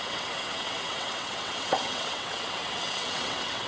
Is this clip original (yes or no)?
no